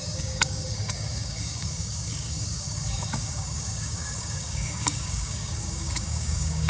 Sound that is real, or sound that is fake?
fake